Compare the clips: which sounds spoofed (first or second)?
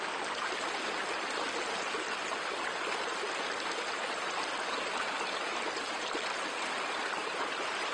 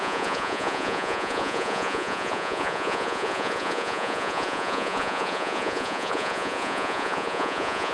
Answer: second